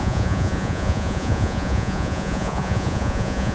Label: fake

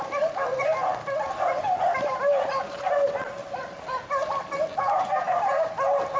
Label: real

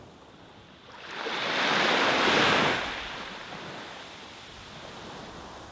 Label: real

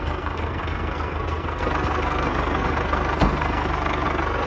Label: fake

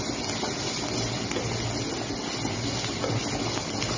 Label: real